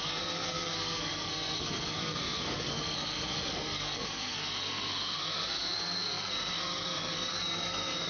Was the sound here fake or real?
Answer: fake